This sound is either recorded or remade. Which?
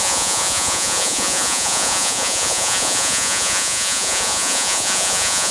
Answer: remade